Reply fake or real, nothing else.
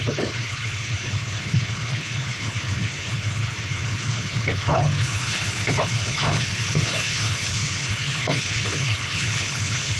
fake